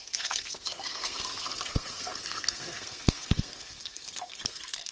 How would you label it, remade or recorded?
remade